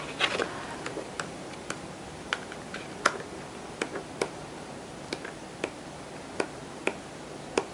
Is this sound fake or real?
real